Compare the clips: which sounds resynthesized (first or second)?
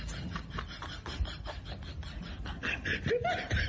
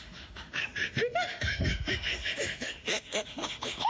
second